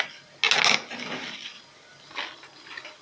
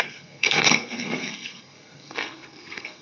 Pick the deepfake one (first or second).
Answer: second